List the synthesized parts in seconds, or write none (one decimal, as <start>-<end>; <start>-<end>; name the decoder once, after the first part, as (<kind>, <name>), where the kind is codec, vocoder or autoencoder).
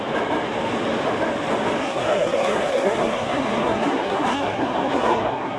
1.8-5.6 (codec, SNAC)